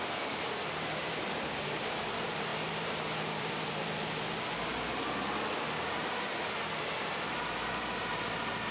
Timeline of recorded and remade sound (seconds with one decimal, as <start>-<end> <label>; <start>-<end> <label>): 0.0-4.7 remade; 4.7-7.7 recorded; 7.7-8.7 remade